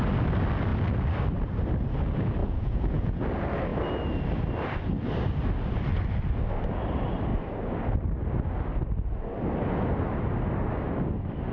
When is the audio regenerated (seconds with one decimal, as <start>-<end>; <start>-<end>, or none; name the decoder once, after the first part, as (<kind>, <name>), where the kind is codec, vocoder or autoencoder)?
2.4-3.2 (vocoder, Vocos)